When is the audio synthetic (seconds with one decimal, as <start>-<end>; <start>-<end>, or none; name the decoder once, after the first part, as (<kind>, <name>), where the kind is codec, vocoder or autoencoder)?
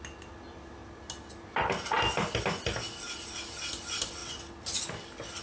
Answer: none